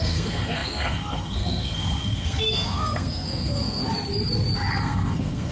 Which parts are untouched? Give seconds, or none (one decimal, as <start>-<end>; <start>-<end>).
3.8-4.7